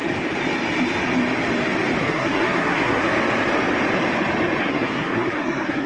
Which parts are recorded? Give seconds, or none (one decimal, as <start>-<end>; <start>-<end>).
0.0-2.0; 3.0-4.6